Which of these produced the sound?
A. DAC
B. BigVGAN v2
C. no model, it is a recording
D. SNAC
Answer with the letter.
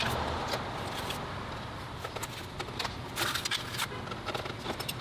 C